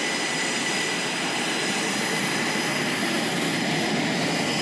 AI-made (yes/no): no